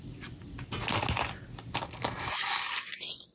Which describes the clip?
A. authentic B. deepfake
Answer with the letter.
A